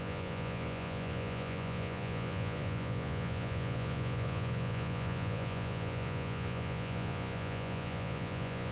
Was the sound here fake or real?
fake